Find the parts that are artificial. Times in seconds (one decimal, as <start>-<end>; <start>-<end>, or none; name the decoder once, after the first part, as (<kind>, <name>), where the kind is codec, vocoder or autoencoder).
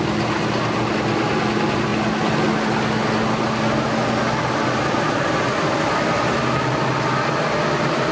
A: none